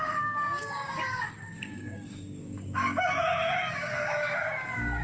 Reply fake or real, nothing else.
fake